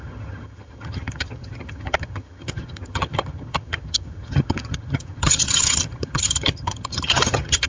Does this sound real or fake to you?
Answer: fake